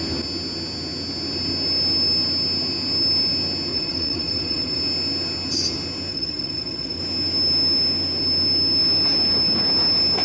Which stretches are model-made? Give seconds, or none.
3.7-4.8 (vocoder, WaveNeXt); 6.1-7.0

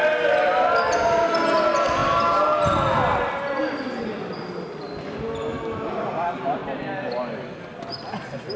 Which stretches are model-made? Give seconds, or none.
none

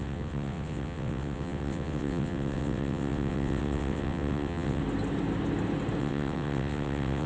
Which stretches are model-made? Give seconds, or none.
0.0-4.8 (vocoder, WaveNeXt); 6.0-7.3

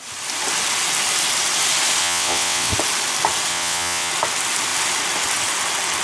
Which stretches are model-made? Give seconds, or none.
2.0-2.7 (vocoder, WaveNeXt); 3.5-4.1

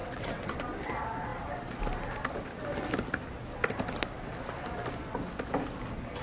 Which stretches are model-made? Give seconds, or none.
0.0-0.5 (vocoder, WaveNeXt)

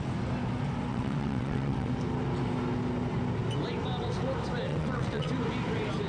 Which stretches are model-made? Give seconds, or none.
0.9-1.9 (vocoder, WaveNeXt); 4.7-5.3

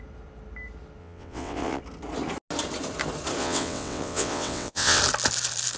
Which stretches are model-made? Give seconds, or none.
1.0-1.8 (vocoder, WaveNeXt); 3.4-5.0

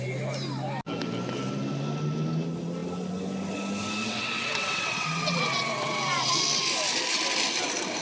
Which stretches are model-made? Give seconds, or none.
4.0-6.3 (vocoder, WaveNeXt)